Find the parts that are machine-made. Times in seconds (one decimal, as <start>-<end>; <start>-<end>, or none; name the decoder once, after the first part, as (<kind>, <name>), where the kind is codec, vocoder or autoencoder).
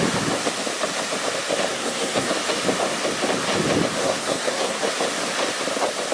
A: 1.7-2.3 (codec, SNAC); 4.0-4.8